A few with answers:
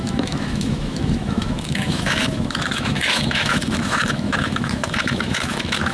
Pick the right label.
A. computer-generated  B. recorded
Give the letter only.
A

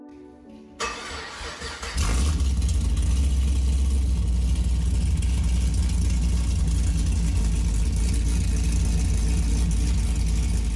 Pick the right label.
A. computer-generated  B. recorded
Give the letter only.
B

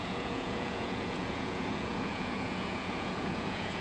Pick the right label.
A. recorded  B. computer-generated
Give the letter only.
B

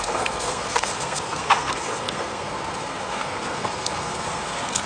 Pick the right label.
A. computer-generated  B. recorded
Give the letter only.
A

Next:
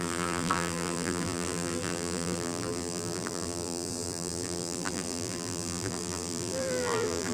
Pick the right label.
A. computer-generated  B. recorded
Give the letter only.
A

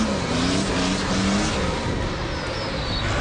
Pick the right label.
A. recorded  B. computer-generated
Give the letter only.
A